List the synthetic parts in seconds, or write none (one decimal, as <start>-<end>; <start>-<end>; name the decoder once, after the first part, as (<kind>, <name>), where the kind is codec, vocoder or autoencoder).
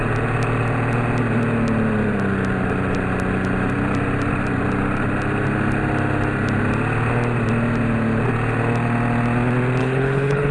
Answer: 9.8-10.5 (codec, HILCodec)